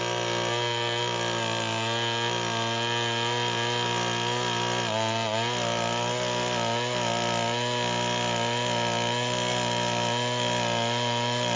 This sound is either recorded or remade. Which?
recorded